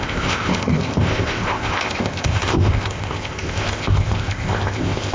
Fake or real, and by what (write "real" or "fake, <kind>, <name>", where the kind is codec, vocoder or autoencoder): fake, codec, ZipCodec